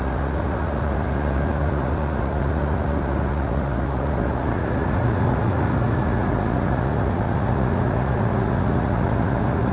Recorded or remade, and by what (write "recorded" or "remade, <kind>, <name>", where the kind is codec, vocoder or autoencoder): remade, vocoder, Vocos